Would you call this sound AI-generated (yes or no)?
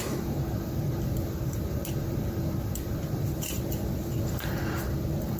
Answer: yes